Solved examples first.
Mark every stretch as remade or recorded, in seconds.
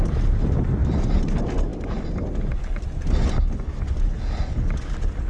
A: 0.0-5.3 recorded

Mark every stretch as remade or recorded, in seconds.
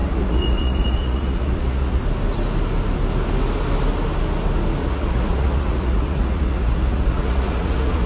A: 0.0-2.0 remade; 2.0-4.8 recorded; 4.8-8.1 remade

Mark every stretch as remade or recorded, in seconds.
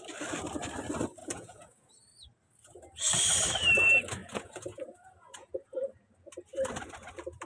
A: 0.0-1.2 recorded; 1.2-1.9 remade; 1.9-4.2 recorded; 4.2-6.1 remade; 6.1-7.5 recorded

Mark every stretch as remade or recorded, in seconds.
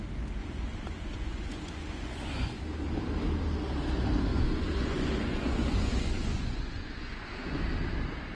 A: 0.0-0.4 recorded; 0.4-2.6 remade; 2.6-4.3 recorded; 4.3-7.6 remade; 7.6-8.3 recorded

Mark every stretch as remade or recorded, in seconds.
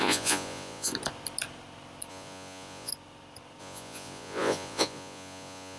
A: 0.0-0.9 remade; 0.9-2.1 recorded; 2.1-2.9 remade; 2.9-3.6 recorded; 3.6-5.8 remade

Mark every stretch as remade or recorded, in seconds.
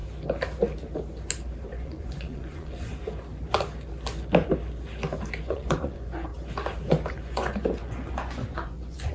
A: 0.0-1.7 recorded; 1.7-2.9 remade; 2.9-5.4 recorded; 5.4-6.3 remade; 6.3-7.1 recorded; 7.1-9.1 remade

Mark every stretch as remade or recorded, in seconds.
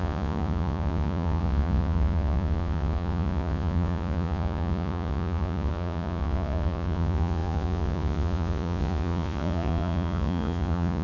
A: 0.0-11.0 remade